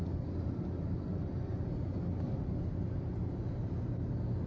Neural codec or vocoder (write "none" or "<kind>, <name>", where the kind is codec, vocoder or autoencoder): none